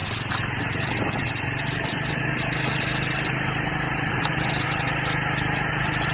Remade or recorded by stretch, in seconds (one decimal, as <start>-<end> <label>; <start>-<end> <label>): 0.0-6.1 recorded